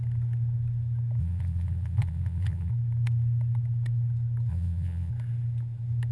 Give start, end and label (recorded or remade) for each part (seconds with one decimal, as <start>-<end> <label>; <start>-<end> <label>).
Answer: 0.0-1.2 recorded; 1.2-2.7 remade; 2.7-4.5 recorded; 4.5-5.1 remade; 5.1-6.1 recorded